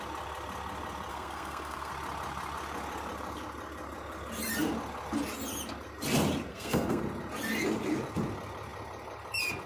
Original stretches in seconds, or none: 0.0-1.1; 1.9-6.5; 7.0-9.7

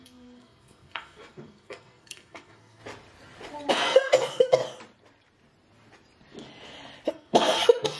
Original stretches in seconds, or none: 2.8-3.7; 4.6-7.1